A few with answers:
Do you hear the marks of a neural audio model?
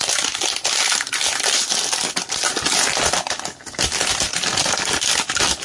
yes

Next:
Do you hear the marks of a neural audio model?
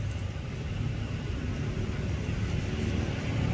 no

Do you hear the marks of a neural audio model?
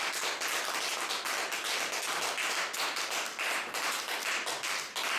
no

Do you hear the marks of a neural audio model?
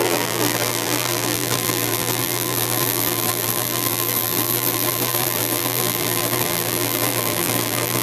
yes